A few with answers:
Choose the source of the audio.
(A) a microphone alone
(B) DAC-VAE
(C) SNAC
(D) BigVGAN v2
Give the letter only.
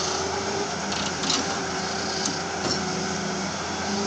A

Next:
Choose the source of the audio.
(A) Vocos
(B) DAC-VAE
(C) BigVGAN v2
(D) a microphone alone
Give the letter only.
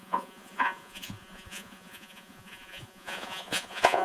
A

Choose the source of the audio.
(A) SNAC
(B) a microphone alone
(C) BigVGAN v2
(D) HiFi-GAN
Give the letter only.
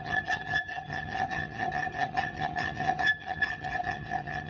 D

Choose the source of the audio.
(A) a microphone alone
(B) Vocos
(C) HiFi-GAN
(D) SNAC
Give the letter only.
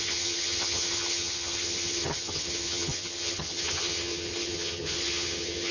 C